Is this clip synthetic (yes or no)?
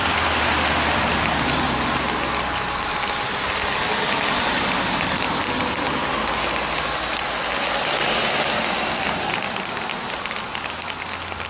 no